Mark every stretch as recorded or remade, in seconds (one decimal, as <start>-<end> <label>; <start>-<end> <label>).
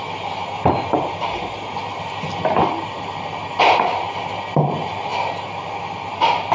0.0-6.5 recorded